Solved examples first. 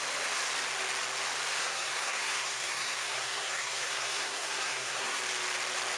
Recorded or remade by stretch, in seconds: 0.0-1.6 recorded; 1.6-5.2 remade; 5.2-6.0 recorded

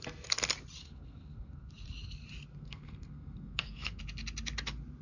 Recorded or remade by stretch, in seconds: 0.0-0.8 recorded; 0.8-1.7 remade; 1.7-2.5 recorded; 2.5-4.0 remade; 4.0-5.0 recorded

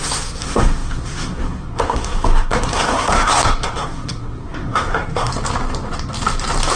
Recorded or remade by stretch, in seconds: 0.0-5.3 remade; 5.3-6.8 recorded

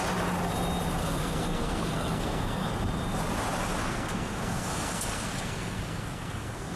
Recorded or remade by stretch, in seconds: 0.0-1.0 recorded; 1.0-2.7 remade; 2.7-3.9 recorded; 3.9-6.8 remade